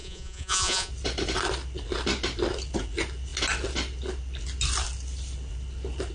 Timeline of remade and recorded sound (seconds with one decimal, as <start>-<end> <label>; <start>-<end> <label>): 0.0-0.9 remade; 0.9-6.1 recorded